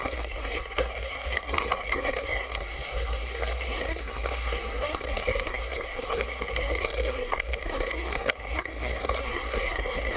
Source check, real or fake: fake